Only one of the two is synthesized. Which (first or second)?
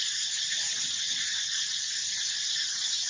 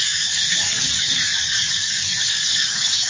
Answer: second